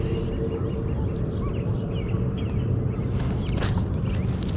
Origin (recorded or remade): recorded